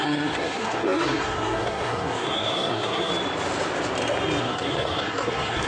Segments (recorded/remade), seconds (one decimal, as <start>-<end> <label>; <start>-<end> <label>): 0.0-3.1 remade; 3.1-4.4 recorded; 4.4-5.7 remade